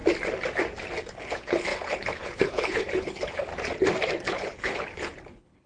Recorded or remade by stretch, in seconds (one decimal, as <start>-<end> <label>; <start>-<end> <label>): 0.0-1.1 recorded; 1.1-3.5 remade; 3.5-4.3 recorded; 4.3-5.7 remade